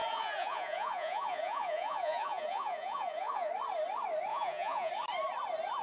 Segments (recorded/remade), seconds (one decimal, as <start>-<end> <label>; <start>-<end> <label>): 0.0-3.5 remade; 3.5-4.3 recorded; 4.3-4.9 remade; 4.9-5.8 recorded